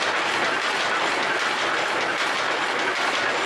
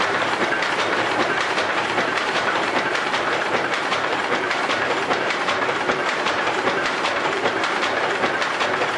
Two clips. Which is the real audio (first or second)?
first